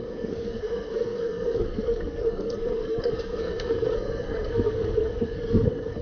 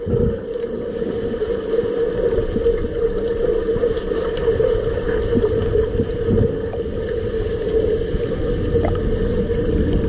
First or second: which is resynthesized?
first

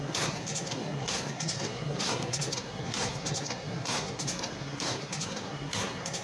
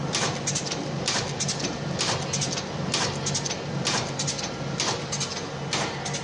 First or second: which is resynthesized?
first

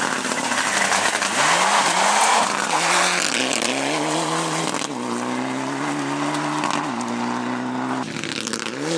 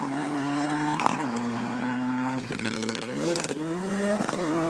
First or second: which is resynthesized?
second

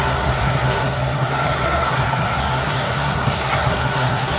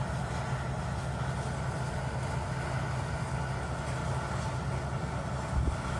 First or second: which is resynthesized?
first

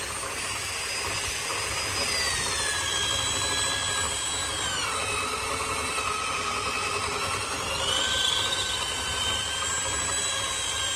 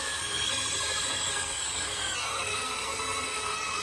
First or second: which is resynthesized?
second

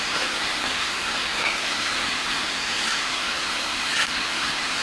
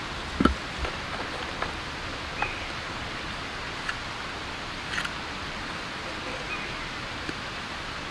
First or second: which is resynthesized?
first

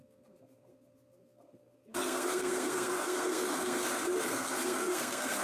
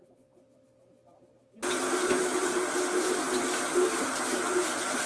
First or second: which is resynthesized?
first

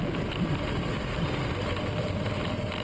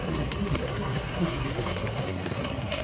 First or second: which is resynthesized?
second